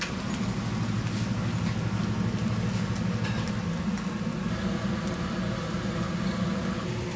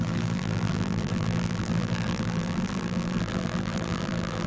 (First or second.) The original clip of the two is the first